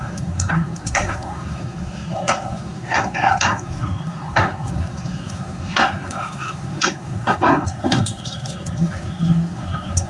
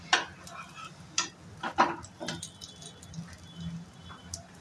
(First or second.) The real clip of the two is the second